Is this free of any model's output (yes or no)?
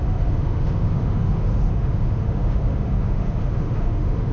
no